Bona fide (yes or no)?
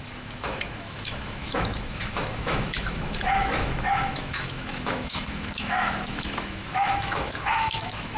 no